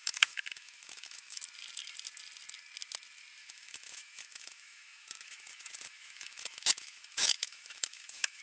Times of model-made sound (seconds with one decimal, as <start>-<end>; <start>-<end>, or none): 0.0-1.4; 3.4-8.4